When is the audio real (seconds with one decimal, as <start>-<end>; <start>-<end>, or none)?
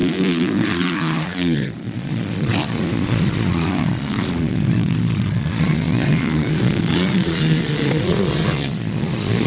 none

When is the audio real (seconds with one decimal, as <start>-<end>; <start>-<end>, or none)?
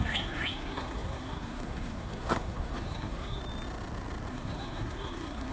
3.4-4.3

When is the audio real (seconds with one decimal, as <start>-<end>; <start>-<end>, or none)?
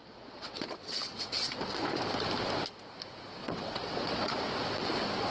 1.8-3.4; 4.4-5.3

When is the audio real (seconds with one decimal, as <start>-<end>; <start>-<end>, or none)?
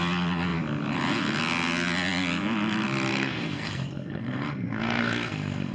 0.0-3.1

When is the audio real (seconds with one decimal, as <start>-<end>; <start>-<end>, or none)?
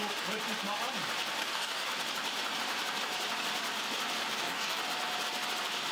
0.0-1.4; 1.9-4.3; 4.8-5.9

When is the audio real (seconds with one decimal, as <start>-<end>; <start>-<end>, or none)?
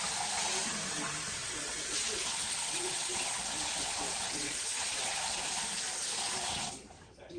0.0-1.4; 5.4-7.4